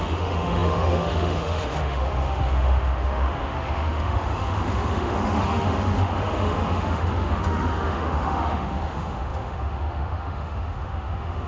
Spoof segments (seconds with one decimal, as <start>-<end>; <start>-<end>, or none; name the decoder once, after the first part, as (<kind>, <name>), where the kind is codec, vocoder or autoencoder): 0.0-11.5 (autoencoder, DAC-VAE)